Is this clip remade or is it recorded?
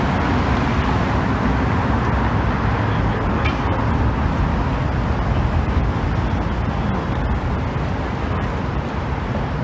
recorded